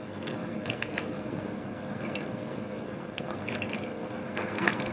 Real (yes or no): no